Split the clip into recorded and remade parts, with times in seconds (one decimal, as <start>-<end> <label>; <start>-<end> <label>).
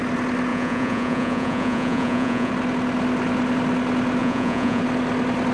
0.0-0.5 recorded; 0.5-2.5 remade; 2.5-4.2 recorded; 4.2-4.8 remade; 4.8-5.5 recorded